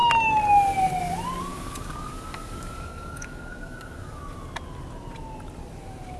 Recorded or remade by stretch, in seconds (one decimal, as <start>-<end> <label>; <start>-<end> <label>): 0.0-1.5 recorded; 1.5-4.2 remade; 4.2-6.2 recorded